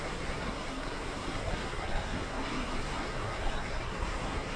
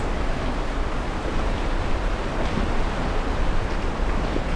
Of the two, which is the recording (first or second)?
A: second